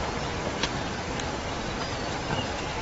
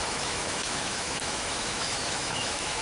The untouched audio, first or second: first